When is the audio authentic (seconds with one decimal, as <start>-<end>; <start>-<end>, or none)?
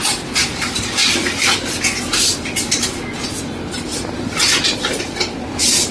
0.0-3.9; 5.0-5.9